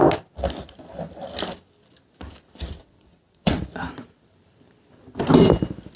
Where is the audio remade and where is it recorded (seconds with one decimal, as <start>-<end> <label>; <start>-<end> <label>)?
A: 0.0-2.8 recorded; 2.8-3.6 remade; 3.6-6.0 recorded